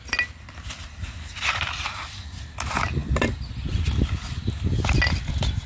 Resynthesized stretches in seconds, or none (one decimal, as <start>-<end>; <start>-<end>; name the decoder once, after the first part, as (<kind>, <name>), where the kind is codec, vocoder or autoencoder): none